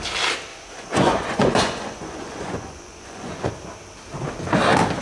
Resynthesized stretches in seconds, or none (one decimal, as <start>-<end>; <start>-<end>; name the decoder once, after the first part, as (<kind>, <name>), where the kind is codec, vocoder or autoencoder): 0.5-3.5 (vocoder, Vocos)